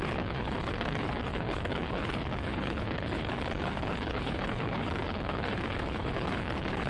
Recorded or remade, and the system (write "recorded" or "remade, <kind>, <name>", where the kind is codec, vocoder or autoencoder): remade, codec, HILCodec